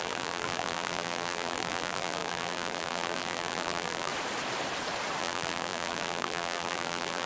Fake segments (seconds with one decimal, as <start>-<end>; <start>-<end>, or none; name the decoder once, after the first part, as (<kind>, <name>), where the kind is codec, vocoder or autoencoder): 0.0-4.1 (vocoder, BigVGAN v2); 5.2-7.3